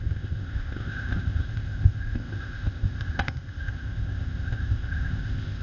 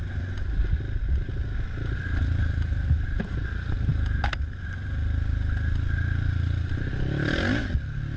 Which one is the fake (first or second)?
first